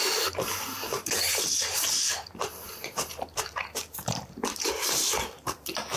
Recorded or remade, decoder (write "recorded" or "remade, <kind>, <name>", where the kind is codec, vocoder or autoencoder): remade, vocoder, BigVGAN v2